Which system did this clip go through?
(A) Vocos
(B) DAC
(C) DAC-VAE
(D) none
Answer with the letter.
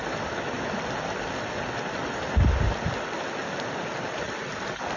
D